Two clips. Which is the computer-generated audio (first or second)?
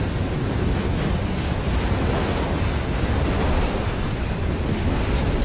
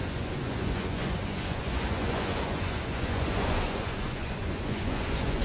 second